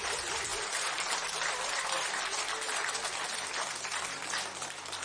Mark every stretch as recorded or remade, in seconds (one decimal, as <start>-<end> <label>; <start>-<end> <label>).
0.0-5.0 recorded